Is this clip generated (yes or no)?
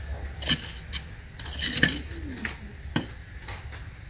no